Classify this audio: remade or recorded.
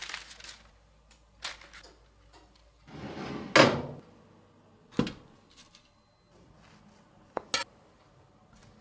recorded